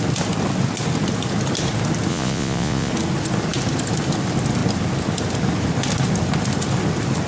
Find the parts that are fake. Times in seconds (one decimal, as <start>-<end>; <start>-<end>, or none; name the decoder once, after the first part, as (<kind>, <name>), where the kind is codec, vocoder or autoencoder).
2.1-2.9 (vocoder, Vocos)

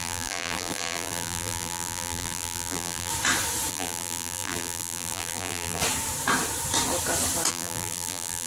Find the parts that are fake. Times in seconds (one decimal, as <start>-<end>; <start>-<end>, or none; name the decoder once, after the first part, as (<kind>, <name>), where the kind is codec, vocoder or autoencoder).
0.0-3.1 (vocoder, BigVGAN v2); 3.7-5.8; 7.5-8.5

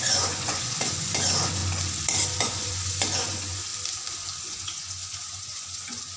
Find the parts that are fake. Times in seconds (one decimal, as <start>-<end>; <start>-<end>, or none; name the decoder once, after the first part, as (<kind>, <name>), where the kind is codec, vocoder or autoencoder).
0.0-1.6 (vocoder, Vocos); 2.4-3.7; 4.4-6.2

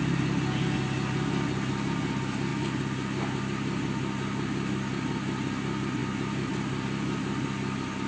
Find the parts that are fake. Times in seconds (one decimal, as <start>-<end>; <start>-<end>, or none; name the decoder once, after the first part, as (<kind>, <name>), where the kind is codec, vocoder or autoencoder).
none

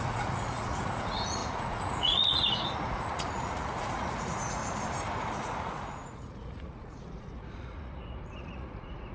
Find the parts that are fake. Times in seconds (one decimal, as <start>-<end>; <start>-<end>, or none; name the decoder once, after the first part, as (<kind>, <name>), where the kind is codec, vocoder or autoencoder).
0.0-4.6 (vocoder, Vocos); 5.2-9.1

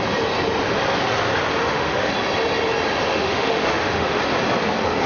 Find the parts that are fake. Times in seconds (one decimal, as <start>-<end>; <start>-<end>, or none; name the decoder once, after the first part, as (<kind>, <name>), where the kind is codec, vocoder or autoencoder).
1.6-2.1 (autoencoder, DAC-VAE); 3.1-4.2

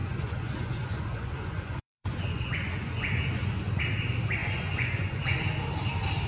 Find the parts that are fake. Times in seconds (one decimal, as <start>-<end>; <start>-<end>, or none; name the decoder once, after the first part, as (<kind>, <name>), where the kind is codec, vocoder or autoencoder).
0.0-3.8 (vocoder, Vocos); 4.4-5.4

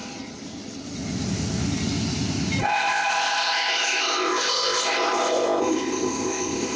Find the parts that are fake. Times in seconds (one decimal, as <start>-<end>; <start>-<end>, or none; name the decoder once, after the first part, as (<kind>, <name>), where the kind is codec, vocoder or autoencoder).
2.6-6.8 (codec, ZipCodec)